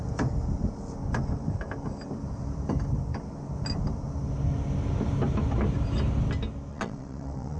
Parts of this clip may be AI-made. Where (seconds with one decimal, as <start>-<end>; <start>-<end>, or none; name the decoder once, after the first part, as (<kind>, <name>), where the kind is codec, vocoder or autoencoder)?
6.7-7.6 (vocoder, WaveNeXt)